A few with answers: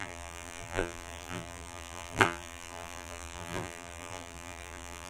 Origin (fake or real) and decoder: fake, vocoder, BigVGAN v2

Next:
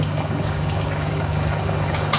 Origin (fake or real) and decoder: fake, codec, DAC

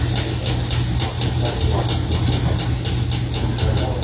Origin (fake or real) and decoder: real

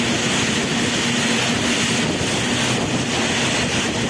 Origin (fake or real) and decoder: real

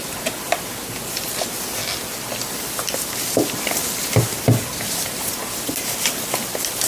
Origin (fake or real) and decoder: real